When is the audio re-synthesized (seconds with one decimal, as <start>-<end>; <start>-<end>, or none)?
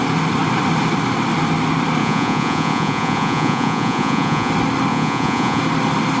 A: 2.0-4.5; 4.9-5.6